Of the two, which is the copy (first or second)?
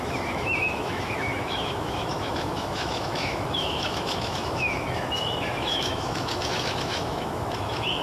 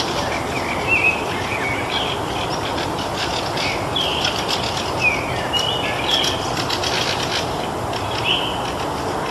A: first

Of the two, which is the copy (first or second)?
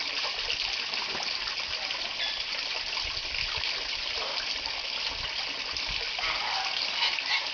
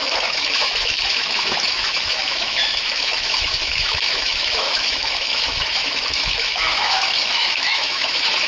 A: second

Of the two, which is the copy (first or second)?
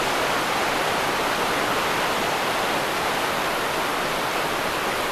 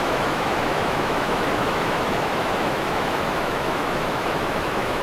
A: second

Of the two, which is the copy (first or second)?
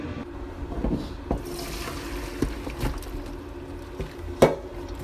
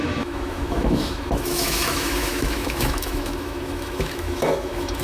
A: second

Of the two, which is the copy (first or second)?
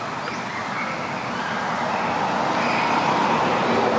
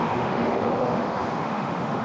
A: second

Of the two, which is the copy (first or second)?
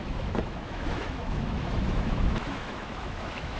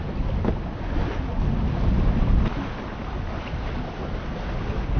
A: first